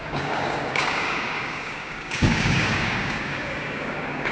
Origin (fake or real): fake